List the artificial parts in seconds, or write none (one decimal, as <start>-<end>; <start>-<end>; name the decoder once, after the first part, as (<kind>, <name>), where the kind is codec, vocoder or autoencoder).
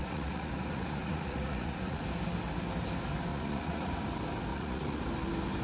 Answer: 0.0-2.0 (vocoder, Vocos); 3.3-3.9; 4.5-5.0